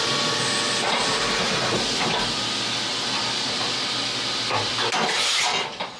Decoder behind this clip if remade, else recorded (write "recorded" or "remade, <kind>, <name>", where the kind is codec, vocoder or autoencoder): recorded